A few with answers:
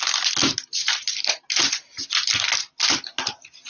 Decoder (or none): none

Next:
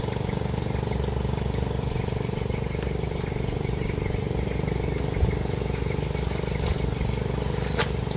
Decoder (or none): none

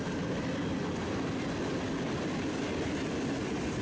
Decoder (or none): none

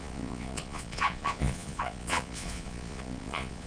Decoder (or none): vocoder, Vocos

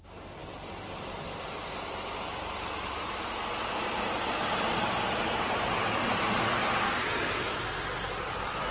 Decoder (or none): none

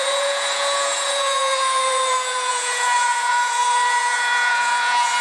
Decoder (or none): vocoder, Vocos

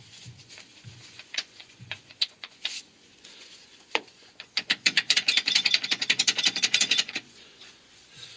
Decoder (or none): vocoder, Vocos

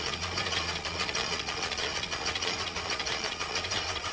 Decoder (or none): vocoder, Vocos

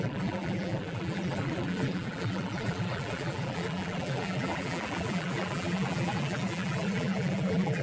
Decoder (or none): vocoder, BigVGAN v2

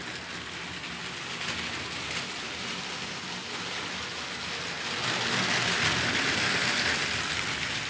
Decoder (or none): none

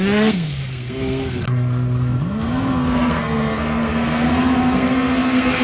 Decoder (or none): codec, SNAC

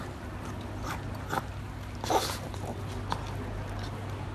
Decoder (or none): none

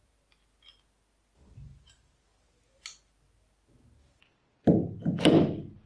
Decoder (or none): none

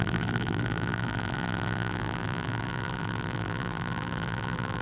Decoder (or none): vocoder, BigVGAN v2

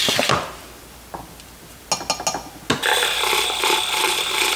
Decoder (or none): none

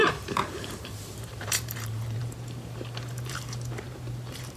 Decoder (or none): vocoder, BigVGAN v2